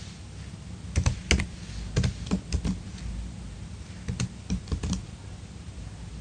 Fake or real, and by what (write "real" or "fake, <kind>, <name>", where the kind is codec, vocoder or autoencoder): real